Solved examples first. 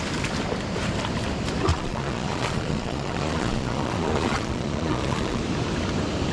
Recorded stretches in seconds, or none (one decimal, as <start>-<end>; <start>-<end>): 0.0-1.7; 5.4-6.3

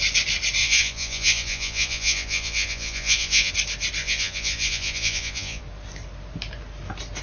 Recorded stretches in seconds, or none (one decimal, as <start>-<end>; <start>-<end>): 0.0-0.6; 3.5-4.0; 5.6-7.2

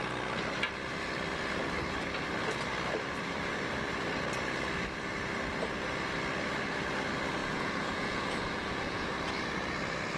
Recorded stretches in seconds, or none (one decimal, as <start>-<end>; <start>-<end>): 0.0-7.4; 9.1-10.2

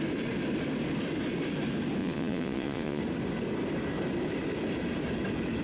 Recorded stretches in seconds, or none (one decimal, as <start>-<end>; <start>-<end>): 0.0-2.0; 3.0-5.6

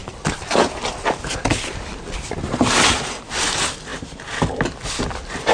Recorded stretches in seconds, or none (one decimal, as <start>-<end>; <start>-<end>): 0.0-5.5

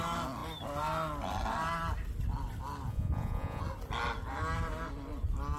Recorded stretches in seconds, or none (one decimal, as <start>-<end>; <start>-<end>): 0.0-2.9; 3.6-5.6

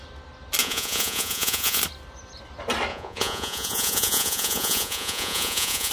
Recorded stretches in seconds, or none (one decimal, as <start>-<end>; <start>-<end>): 0.0-0.6; 1.8-2.9

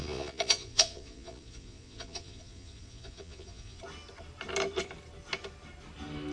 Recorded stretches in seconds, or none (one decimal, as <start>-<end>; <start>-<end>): 3.8-6.3